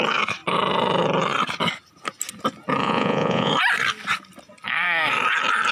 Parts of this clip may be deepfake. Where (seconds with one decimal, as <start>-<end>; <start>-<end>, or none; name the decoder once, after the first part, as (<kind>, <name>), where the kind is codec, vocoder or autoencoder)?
2.8-3.5 (vocoder, Vocos)